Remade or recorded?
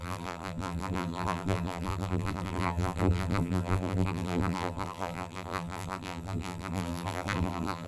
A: remade